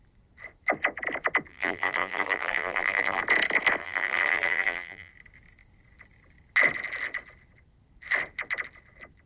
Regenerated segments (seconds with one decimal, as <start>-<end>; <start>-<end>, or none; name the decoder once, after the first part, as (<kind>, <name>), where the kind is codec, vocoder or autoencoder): 1.5-3.2 (vocoder, BigVGAN v2); 3.8-5.1